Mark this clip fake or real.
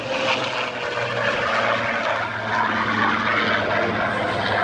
real